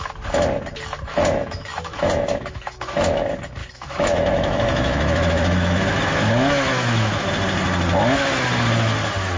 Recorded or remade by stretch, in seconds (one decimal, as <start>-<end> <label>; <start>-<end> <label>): 0.0-1.1 recorded; 1.1-3.2 remade; 3.2-3.6 recorded; 3.6-7.3 remade; 7.3-9.4 recorded